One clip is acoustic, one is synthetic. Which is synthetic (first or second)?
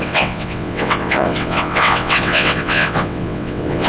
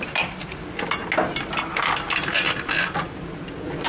first